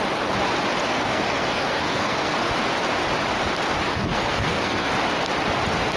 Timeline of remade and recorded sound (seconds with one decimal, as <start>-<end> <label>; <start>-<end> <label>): 0.0-0.9 recorded; 0.9-2.5 remade; 2.5-3.9 recorded; 3.9-4.9 remade; 4.9-6.0 recorded